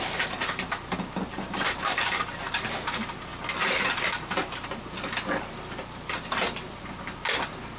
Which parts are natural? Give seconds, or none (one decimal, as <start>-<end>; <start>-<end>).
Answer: 0.0-7.8